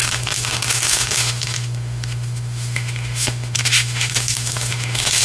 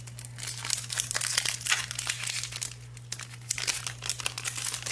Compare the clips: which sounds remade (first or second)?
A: first